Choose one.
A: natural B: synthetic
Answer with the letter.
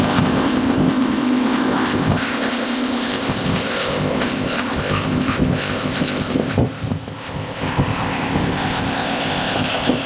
B